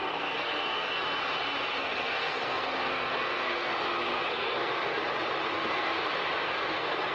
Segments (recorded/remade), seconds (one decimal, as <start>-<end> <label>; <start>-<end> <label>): 0.0-1.0 remade; 1.0-1.7 recorded; 1.7-3.7 remade; 3.7-4.3 recorded; 4.3-5.0 remade; 5.0-5.5 recorded; 5.5-5.9 remade; 5.9-6.4 recorded; 6.4-7.1 remade